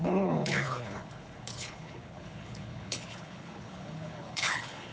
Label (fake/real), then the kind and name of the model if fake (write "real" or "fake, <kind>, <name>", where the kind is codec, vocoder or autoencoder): fake, codec, HILCodec